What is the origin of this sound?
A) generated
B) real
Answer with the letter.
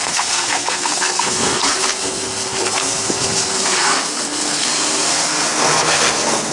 A